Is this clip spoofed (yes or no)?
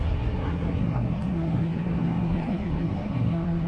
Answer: yes